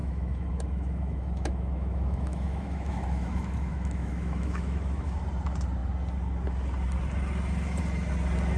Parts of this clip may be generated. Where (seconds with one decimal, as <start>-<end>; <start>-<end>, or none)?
0.0-5.2